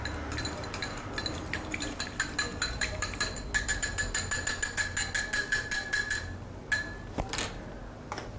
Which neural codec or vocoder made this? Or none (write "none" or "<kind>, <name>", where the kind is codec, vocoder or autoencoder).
none